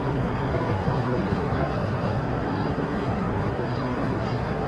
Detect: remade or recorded remade